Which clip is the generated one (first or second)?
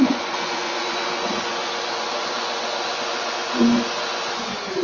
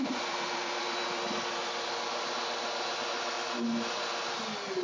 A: first